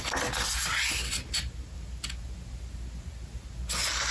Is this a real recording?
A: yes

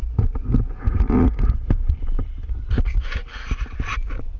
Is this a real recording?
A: yes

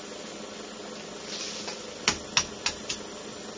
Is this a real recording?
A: yes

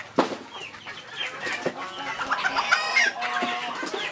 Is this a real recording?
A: yes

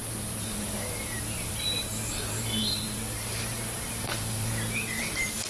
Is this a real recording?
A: no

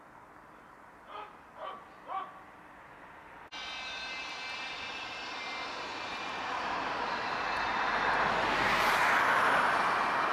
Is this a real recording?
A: yes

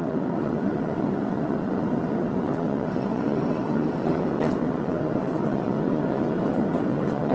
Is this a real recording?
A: no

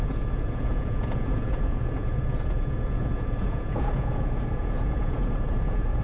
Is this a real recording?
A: no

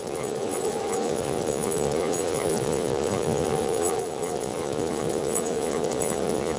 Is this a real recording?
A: no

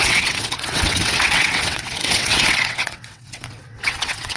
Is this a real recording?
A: no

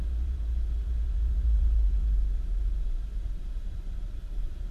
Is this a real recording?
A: no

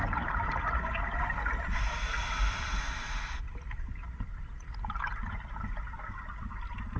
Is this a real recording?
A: yes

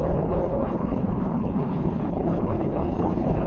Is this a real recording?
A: no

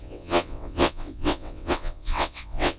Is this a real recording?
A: no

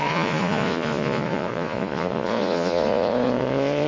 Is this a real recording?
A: no